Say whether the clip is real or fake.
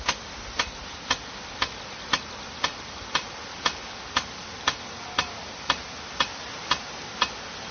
real